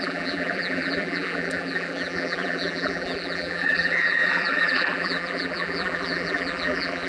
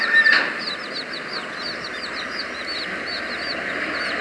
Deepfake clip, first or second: first